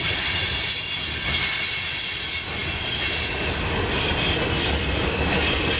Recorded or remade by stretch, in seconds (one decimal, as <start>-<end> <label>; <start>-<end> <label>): 0.0-5.8 recorded